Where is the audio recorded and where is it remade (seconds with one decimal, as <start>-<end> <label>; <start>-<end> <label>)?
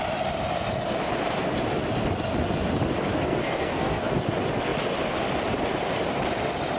0.0-3.1 recorded; 3.1-4.3 remade; 4.3-6.8 recorded